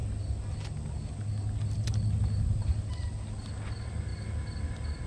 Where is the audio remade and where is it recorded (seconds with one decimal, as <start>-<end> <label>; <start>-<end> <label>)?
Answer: 0.0-5.1 recorded